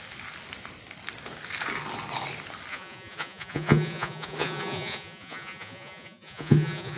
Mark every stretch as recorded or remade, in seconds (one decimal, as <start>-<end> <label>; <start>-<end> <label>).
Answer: 0.0-2.7 recorded; 2.7-7.0 remade